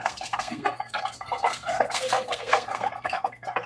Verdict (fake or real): fake